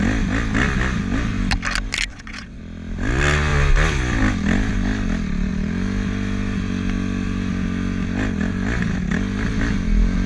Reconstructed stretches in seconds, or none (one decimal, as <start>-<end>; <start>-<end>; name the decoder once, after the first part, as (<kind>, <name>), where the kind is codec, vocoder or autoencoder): 2.1-2.6 (vocoder, WaveNeXt)